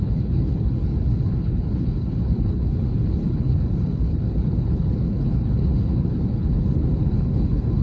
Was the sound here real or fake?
fake